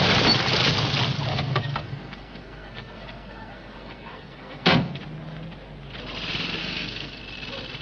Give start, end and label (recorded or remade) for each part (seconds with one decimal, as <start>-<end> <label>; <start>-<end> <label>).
0.0-1.3 recorded; 1.3-5.0 remade; 5.0-6.6 recorded; 6.6-7.2 remade; 7.2-7.8 recorded